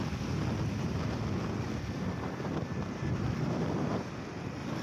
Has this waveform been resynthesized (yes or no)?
no